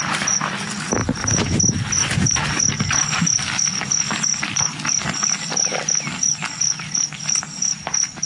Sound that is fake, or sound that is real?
real